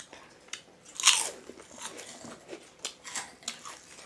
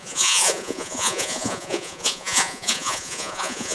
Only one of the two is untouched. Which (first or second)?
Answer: first